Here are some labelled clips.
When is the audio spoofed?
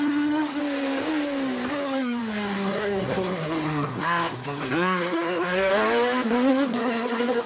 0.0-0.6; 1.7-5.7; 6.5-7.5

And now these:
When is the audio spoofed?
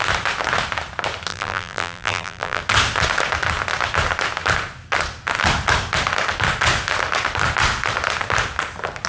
1.3-2.6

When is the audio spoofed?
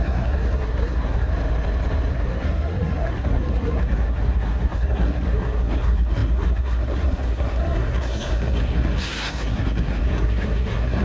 0.0-1.3; 2.1-11.0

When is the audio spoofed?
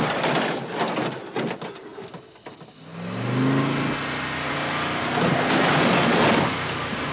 none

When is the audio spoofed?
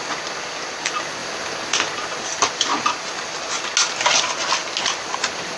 none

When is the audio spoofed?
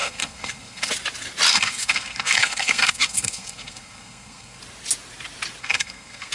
0.0-0.9; 1.5-4.6; 5.6-6.3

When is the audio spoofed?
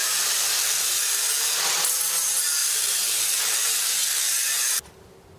none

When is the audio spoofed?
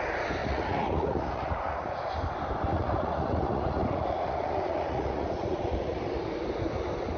0.4-2.1; 2.7-6.0